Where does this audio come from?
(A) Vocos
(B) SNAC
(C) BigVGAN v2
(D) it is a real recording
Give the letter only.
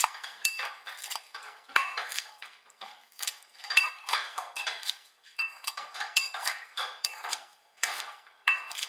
B